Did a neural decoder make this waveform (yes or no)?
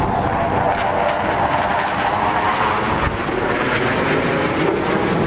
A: no